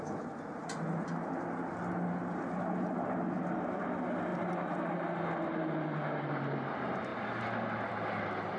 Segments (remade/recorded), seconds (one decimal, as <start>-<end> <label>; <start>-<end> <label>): 0.0-8.6 recorded